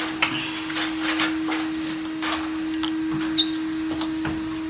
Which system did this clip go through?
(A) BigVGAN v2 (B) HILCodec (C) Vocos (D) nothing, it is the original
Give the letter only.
D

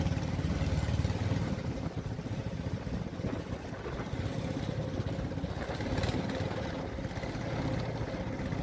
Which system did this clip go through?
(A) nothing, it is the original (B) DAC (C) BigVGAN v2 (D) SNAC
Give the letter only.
A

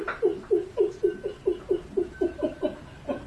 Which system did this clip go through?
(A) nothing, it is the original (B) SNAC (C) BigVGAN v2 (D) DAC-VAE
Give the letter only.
A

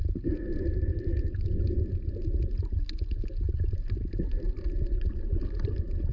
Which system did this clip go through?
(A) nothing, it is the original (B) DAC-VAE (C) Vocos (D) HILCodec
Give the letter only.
A